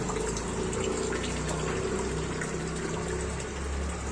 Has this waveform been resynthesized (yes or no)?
no